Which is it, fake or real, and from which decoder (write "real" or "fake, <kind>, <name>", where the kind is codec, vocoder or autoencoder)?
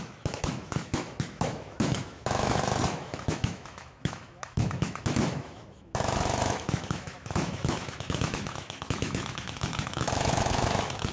fake, autoencoder, DAC-VAE